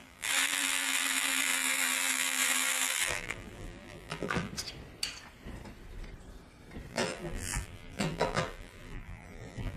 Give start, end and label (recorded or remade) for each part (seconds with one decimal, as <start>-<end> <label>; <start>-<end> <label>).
0.0-4.5 remade; 4.5-6.9 recorded; 6.9-9.8 remade